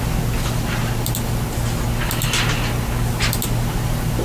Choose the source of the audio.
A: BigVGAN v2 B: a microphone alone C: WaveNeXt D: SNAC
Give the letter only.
B